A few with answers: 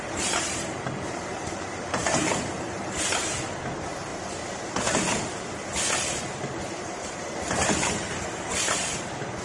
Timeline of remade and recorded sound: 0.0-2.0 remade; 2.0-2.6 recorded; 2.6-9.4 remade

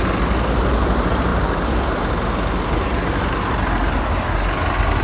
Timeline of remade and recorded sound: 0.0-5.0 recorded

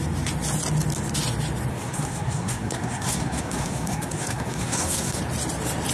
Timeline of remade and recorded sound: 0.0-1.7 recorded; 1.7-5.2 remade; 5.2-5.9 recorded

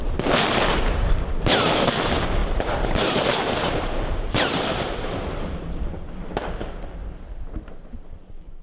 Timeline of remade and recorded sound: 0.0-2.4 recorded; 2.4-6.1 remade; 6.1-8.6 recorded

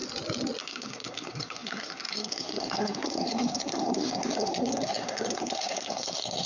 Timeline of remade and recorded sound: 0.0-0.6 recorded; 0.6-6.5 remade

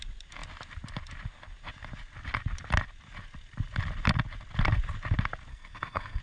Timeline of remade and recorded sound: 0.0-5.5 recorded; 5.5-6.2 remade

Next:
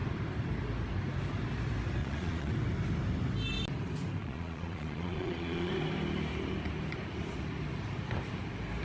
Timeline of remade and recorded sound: 0.0-2.0 recorded; 2.0-2.5 remade; 2.5-4.2 recorded; 4.2-5.7 remade; 5.7-8.8 recorded